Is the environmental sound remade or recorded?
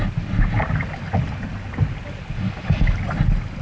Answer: recorded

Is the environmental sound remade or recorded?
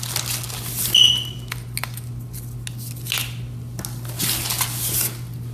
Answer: recorded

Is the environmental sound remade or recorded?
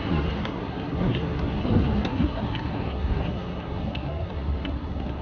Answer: remade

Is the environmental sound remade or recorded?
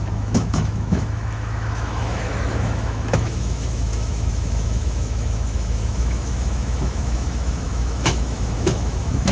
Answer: remade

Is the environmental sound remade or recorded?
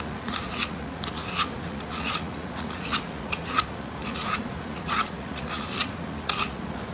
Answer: remade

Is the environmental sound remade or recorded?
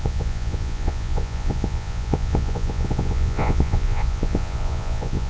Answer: remade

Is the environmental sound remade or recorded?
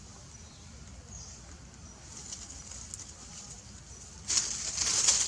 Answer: recorded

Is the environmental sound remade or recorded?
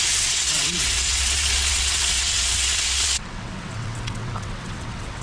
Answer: remade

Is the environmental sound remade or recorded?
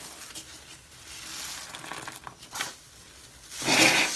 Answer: recorded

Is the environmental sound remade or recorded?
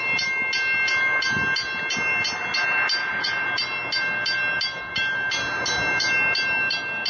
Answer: recorded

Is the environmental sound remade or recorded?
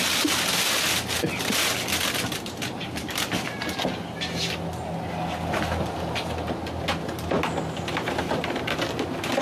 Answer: recorded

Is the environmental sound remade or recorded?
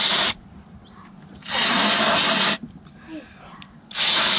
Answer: recorded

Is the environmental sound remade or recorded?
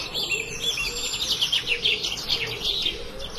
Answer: recorded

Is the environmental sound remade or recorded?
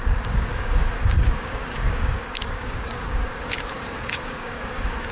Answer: remade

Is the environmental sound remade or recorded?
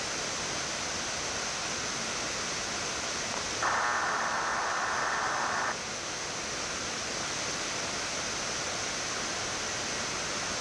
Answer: recorded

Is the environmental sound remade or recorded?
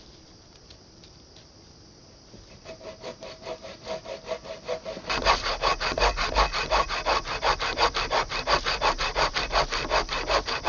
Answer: recorded